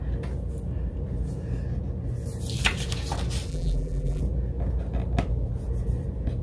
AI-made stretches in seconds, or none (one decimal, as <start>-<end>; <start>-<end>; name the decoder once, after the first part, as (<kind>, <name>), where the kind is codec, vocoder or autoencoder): 3.5-4.2 (vocoder, BigVGAN v2)